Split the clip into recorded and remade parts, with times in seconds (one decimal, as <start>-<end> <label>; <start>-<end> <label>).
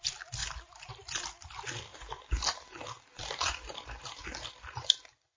0.0-0.4 recorded; 0.4-0.9 remade; 0.9-1.9 recorded; 1.9-5.4 remade